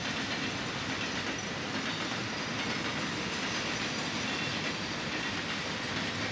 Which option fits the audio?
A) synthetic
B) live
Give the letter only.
B